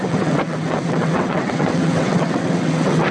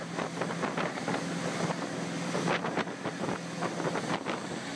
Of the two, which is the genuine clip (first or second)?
second